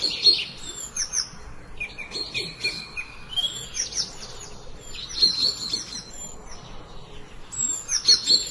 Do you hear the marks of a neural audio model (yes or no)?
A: no